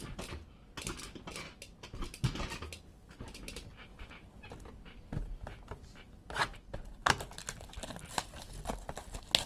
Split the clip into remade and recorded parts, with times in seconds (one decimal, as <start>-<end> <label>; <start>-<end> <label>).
0.0-9.5 recorded